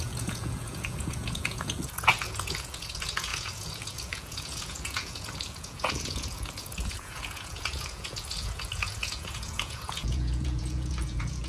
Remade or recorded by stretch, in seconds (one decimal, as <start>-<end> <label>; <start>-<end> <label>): 0.0-11.5 remade